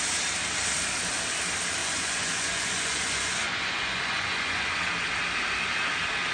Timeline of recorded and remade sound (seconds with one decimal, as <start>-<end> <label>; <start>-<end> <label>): 0.0-1.8 recorded; 1.8-4.7 remade; 4.7-6.3 recorded